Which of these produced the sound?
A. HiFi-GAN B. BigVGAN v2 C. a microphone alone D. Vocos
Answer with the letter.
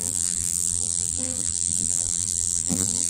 B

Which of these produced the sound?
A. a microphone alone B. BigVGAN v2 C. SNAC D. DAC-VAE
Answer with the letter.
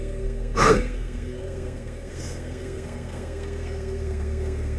C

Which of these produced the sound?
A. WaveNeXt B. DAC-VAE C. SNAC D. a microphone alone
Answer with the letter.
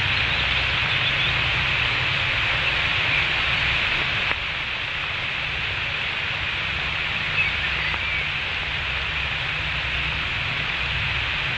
D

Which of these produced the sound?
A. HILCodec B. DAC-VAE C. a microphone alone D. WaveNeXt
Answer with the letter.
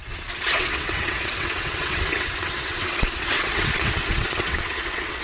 D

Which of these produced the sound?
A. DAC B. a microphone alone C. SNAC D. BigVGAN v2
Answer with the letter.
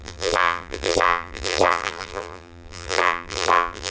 D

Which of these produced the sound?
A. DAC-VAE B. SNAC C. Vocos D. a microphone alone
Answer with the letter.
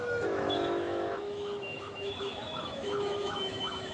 A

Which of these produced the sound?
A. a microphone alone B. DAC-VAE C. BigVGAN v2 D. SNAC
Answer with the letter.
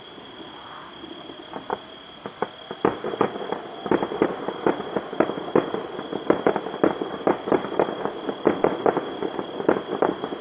A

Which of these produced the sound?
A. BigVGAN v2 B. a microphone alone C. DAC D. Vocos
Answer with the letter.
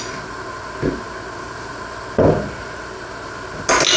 B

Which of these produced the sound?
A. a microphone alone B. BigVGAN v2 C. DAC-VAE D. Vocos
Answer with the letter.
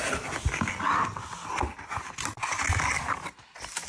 A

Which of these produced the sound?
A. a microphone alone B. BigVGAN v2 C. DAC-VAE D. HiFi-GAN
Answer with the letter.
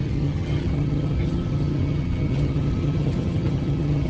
D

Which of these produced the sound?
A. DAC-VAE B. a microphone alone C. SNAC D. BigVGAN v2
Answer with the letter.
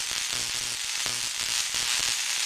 B